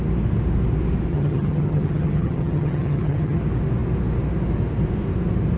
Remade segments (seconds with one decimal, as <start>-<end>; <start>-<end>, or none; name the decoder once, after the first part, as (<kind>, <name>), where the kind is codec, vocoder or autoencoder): 1.1-3.4 (vocoder, HiFi-GAN)